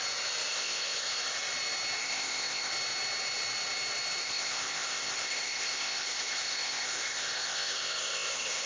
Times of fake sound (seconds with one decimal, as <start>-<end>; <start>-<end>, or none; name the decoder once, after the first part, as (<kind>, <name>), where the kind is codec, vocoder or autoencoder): 0.5-1.2 (codec, ZipCodec); 2.0-2.7; 4.2-8.7